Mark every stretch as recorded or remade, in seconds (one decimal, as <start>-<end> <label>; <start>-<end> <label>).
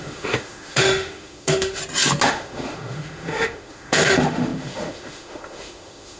0.0-1.8 remade; 1.8-2.3 recorded; 2.3-6.2 remade